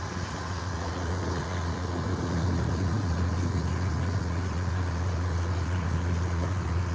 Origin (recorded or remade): remade